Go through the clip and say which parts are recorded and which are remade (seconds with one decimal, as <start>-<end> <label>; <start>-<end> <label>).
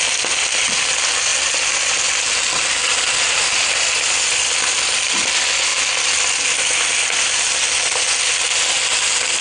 0.0-9.4 recorded